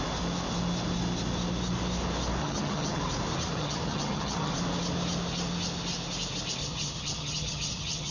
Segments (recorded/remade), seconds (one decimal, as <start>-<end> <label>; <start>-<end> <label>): 0.0-2.4 recorded; 2.4-3.0 remade; 3.0-3.5 recorded; 3.5-4.5 remade; 4.5-6.6 recorded; 6.6-8.1 remade